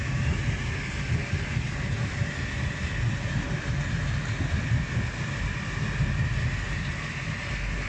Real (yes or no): yes